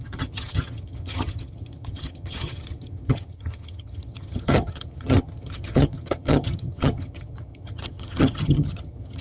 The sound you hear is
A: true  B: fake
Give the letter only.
B